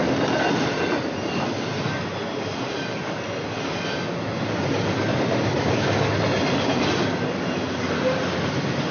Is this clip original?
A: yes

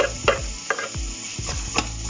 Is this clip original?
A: yes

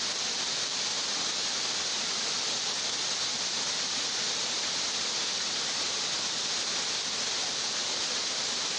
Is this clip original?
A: yes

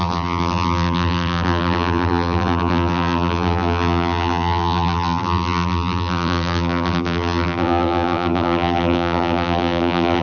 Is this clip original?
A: no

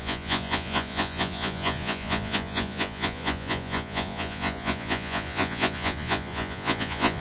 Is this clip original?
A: no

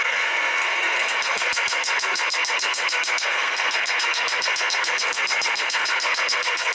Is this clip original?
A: no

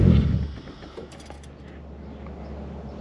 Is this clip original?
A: yes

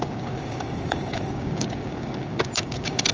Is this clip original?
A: no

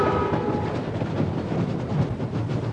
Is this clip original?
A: yes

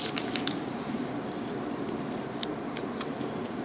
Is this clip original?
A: no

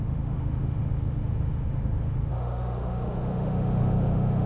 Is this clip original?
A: no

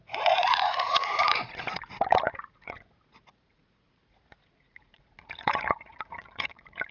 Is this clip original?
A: no